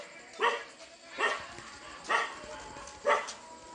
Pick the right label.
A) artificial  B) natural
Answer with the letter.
B